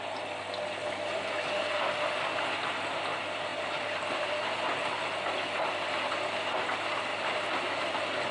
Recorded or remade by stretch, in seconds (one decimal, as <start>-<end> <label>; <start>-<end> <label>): 0.0-3.5 recorded; 3.5-4.3 remade; 4.3-7.1 recorded; 7.1-7.7 remade; 7.7-8.3 recorded